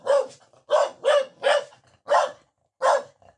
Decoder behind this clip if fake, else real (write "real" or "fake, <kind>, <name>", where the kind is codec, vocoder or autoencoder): real